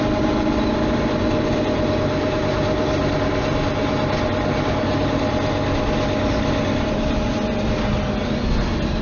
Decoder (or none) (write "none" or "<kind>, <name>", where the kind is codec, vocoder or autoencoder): none